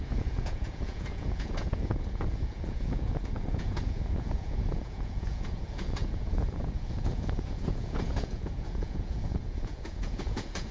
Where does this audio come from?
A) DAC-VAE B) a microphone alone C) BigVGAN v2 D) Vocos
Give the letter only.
D